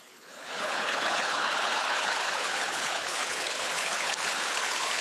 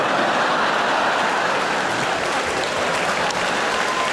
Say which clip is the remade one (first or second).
first